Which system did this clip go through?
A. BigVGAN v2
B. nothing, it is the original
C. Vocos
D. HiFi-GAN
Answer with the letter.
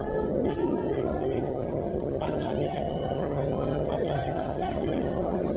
D